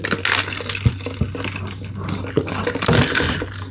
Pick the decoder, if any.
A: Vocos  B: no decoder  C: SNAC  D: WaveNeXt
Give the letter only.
B